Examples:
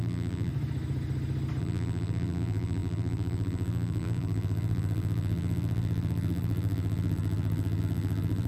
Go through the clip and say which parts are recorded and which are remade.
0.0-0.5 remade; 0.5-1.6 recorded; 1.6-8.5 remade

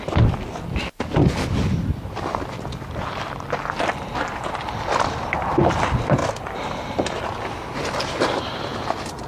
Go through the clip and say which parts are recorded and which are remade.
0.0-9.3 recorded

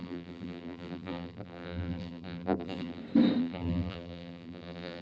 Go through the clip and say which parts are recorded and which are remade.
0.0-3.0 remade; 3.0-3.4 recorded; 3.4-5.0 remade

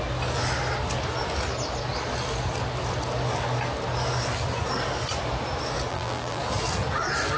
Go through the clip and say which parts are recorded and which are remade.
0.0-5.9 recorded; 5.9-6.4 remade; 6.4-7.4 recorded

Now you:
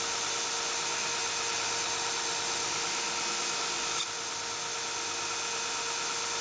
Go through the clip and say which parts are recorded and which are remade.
0.0-6.4 recorded